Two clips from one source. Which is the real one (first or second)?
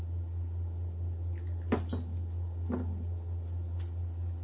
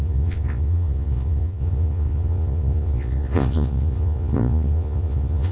first